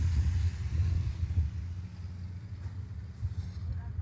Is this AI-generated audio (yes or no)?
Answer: no